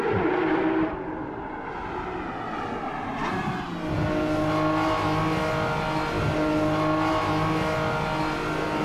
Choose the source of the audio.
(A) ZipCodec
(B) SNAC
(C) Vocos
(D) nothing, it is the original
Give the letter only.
D